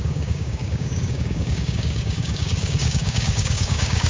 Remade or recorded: remade